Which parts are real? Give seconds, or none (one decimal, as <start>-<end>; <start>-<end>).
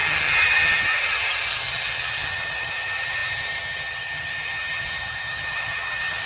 none